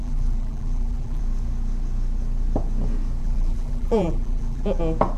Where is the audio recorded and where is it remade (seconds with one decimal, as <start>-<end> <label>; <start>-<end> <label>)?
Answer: 0.0-1.2 remade; 1.2-3.2 recorded; 3.2-4.8 remade; 4.8-5.2 recorded